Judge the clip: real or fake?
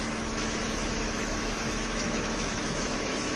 fake